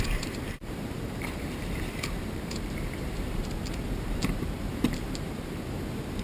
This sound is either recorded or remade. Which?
remade